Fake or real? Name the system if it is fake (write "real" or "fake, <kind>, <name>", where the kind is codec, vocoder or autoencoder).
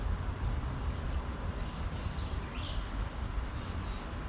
real